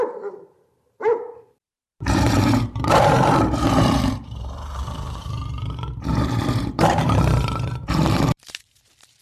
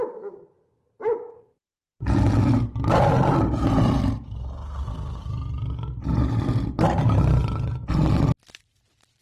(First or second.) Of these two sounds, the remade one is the first